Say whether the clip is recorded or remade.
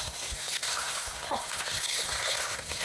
remade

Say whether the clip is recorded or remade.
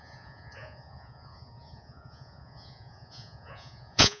remade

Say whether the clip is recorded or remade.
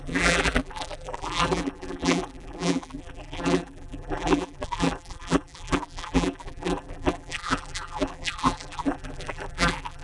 remade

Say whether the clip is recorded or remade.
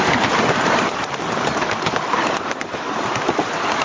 recorded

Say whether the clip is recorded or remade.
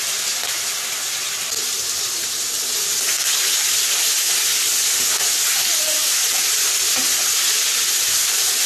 recorded